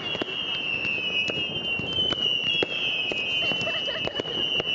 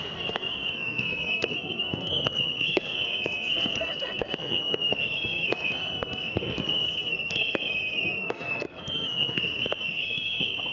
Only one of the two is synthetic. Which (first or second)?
second